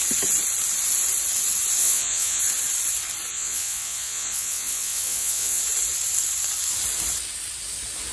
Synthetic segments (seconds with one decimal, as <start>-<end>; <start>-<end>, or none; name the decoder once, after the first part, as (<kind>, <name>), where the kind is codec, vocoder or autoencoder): 1.8-2.4 (vocoder, Vocos); 3.3-5.6